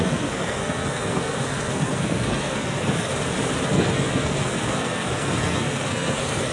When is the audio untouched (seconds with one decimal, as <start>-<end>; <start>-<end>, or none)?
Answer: 3.1-3.7